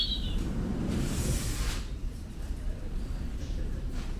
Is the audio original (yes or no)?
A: no